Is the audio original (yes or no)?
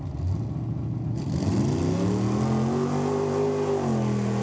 yes